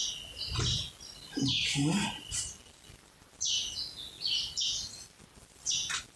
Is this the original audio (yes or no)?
yes